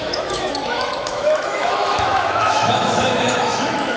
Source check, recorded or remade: remade